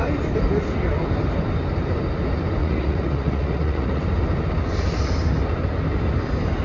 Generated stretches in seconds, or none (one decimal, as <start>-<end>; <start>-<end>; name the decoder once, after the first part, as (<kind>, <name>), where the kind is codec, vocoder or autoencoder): 2.6-4.0 (vocoder, Vocos)